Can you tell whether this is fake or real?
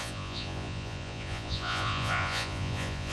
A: fake